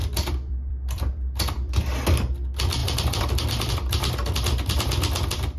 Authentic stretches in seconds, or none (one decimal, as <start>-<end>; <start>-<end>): 1.7-2.8; 3.7-5.6